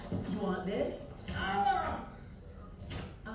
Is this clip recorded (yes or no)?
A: yes